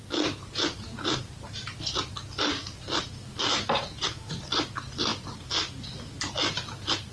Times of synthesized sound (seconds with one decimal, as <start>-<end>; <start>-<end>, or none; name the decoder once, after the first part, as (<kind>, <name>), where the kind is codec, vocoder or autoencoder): 3.8-4.4 (vocoder, Vocos)